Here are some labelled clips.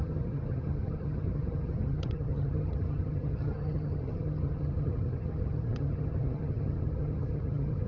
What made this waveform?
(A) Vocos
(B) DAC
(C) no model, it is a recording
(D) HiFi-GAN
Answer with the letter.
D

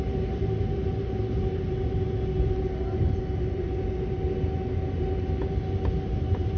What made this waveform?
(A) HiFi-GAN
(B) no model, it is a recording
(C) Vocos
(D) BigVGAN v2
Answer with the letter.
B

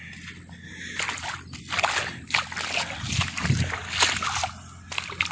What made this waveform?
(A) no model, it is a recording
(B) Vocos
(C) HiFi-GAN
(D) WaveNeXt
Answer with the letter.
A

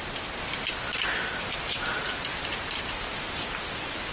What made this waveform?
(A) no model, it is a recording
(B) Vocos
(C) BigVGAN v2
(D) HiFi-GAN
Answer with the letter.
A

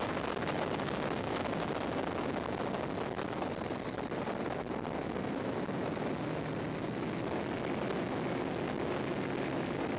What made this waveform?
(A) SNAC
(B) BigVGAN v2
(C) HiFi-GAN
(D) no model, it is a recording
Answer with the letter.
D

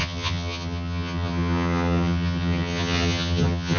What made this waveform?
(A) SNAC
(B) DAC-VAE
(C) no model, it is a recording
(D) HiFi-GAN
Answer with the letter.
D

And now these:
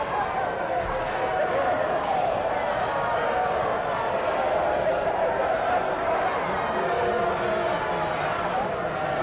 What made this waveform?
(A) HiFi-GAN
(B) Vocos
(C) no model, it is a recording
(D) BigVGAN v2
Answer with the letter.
C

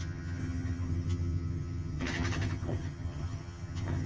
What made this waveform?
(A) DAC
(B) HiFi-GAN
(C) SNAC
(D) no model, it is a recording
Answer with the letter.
B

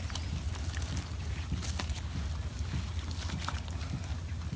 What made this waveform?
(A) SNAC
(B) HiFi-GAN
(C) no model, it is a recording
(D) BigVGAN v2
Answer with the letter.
C